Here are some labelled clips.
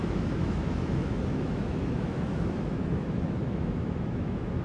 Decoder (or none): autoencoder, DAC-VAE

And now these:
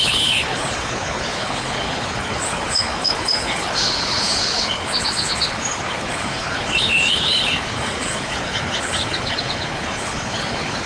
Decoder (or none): codec, HILCodec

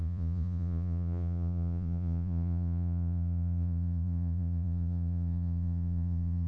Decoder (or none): vocoder, Vocos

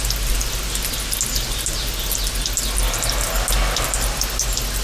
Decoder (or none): none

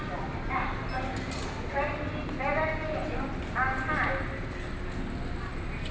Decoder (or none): none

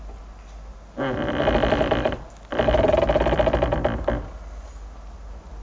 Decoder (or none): none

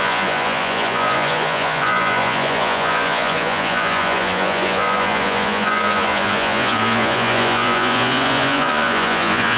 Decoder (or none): vocoder, Vocos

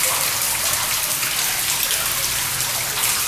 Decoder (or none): none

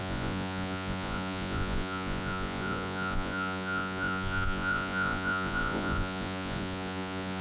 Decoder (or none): vocoder, Vocos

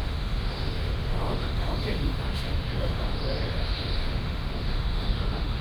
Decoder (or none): autoencoder, DAC-VAE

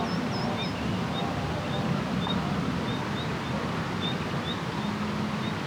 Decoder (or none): none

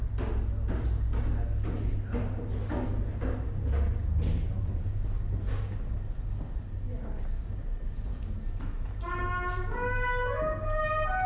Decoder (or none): none